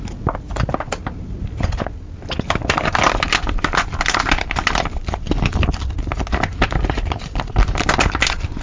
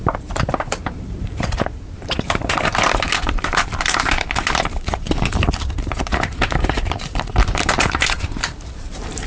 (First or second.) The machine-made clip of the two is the second